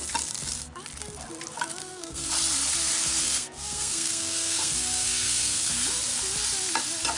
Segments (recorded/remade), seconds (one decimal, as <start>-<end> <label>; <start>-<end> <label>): 0.0-1.8 recorded; 1.8-2.3 remade; 2.3-3.2 recorded; 3.2-5.7 remade; 5.7-7.2 recorded